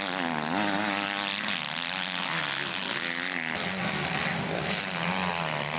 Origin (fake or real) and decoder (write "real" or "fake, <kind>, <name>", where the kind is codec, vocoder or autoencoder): real